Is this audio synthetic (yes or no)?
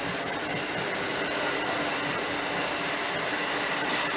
no